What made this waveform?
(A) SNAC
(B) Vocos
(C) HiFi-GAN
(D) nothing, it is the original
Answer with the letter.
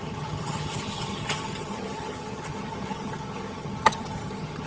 C